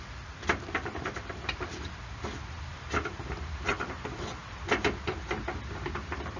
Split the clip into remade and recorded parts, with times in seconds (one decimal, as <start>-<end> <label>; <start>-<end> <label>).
0.0-6.4 remade